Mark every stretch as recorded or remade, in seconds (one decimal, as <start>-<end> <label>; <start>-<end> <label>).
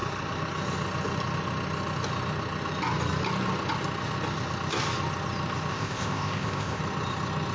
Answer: 0.0-5.7 recorded; 5.7-6.8 remade; 6.8-7.5 recorded